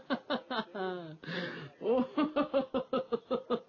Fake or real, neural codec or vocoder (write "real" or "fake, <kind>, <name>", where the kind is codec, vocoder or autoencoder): real